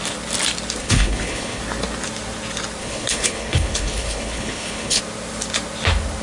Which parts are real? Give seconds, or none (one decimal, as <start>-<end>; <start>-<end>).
0.0-0.8; 1.6-2.8; 5.0-6.2